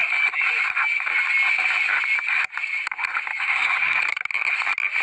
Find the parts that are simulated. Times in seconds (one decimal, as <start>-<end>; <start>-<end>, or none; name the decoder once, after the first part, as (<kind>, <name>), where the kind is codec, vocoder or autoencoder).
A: 3.3-4.0 (codec, DAC)